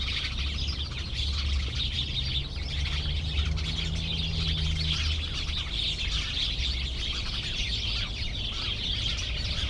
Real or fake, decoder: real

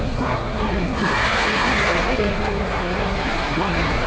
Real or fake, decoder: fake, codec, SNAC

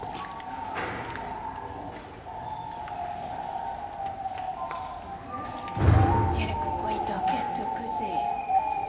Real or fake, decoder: real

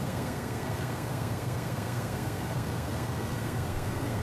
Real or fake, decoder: fake, codec, SNAC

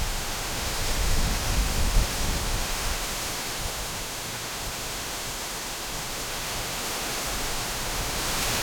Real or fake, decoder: fake, autoencoder, DAC-VAE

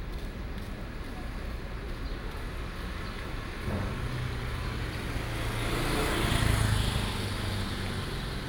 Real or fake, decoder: real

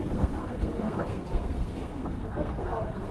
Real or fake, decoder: fake, codec, SNAC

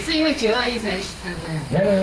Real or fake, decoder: fake, codec, SNAC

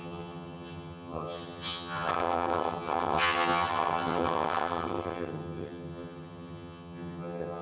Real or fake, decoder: fake, vocoder, HiFi-GAN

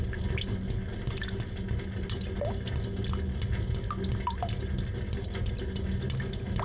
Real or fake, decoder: real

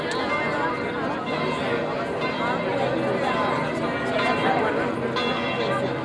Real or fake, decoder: real